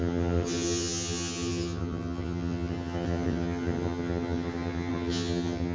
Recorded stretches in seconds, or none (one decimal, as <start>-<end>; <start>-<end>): none